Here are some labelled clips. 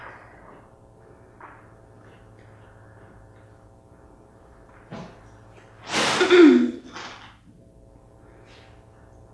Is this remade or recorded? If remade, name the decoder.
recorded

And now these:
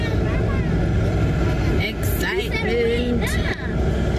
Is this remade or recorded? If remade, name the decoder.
recorded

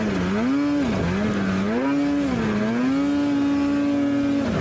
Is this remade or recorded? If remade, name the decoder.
recorded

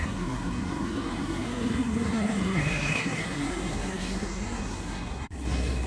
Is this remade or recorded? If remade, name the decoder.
remade, codec, SNAC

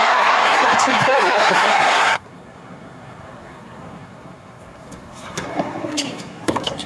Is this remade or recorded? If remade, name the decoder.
remade, codec, SNAC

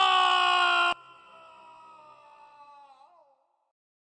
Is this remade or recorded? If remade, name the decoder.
recorded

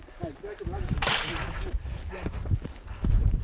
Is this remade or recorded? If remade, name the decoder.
recorded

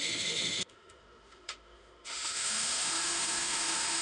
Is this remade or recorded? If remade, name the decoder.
remade, autoencoder, DAC-VAE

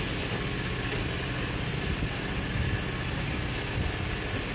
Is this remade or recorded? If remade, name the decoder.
recorded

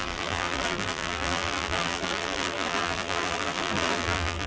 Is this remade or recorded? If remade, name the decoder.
remade, vocoder, BigVGAN v2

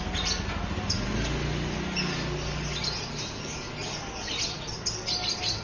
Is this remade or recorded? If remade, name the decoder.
recorded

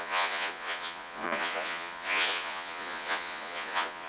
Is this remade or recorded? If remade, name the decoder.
remade, vocoder, Vocos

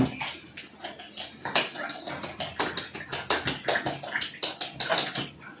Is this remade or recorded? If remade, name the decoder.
recorded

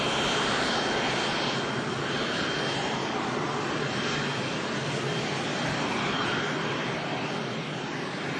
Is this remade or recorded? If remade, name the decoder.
recorded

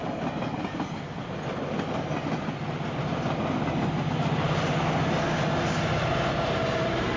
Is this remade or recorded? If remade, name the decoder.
recorded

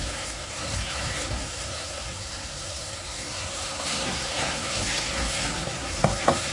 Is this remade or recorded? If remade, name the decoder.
remade, codec, SNAC